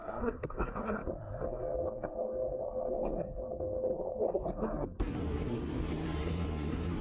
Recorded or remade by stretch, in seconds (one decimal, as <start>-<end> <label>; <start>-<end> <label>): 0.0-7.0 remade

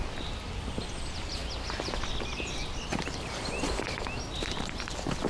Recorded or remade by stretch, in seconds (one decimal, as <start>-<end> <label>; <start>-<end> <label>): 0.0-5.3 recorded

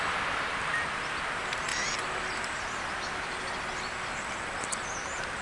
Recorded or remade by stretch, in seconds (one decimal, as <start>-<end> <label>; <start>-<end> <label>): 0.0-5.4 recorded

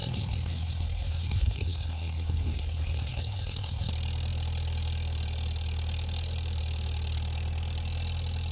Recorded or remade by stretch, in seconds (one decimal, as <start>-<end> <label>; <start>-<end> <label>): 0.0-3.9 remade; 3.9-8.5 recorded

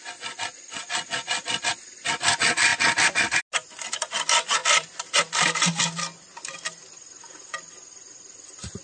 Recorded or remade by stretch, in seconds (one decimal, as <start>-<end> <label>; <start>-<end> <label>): 0.0-8.8 recorded

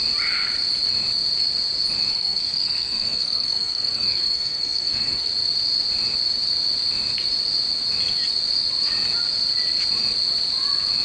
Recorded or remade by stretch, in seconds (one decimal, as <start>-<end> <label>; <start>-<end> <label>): 0.0-2.1 recorded; 2.1-5.3 remade; 5.3-11.0 recorded